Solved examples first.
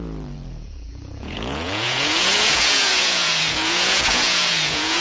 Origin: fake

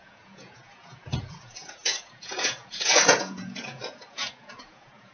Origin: fake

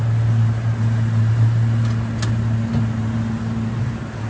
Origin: real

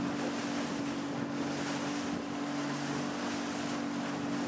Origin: real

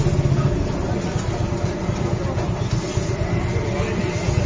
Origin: real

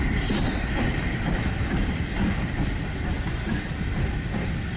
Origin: fake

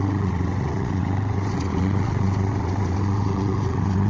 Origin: fake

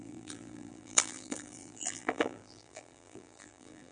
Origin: fake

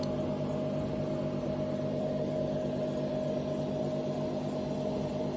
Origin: real